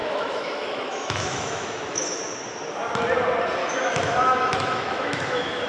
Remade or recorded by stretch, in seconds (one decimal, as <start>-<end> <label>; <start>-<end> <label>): 0.0-2.2 remade; 2.2-3.6 recorded; 3.6-5.7 remade